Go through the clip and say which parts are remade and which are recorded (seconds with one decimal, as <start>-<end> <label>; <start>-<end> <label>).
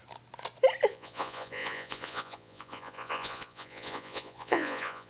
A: 0.0-0.9 recorded; 0.9-5.1 remade